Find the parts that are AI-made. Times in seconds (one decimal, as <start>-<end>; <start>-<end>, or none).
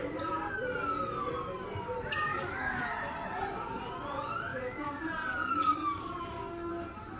2.3-2.8; 4.5-5.0; 5.4-6.7